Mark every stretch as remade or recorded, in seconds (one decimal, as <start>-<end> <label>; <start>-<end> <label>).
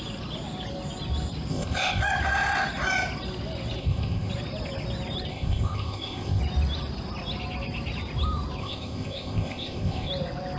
0.0-1.5 recorded; 1.5-2.0 remade; 2.0-3.8 recorded; 3.8-4.3 remade; 4.3-5.3 recorded; 5.3-6.4 remade; 6.4-8.6 recorded; 8.6-10.1 remade; 10.1-10.6 recorded